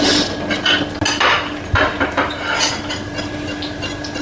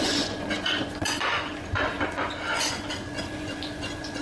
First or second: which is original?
first